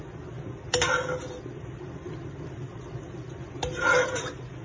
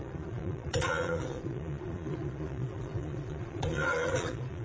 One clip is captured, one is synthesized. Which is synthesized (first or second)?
second